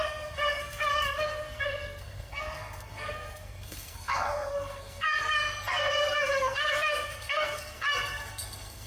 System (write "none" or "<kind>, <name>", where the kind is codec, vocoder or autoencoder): codec, SNAC